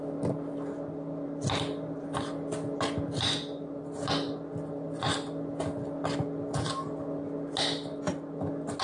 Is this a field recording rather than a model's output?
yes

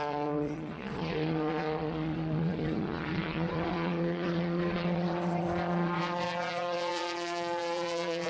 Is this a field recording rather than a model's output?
no